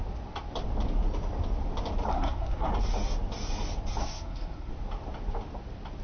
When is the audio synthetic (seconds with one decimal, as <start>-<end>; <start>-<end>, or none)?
2.1-2.7; 4.0-4.7